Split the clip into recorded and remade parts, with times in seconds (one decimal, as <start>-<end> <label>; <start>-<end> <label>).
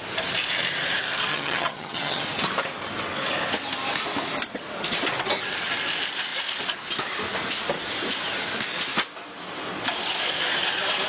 0.0-1.3 recorded; 1.3-2.2 remade; 2.2-11.1 recorded